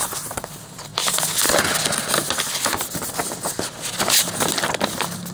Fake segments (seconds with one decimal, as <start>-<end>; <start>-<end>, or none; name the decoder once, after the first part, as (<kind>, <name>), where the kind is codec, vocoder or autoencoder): none